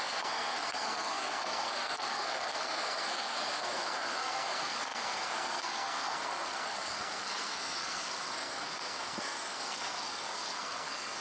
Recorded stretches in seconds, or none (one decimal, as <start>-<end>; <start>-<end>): none